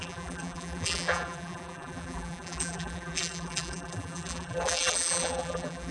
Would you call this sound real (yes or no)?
no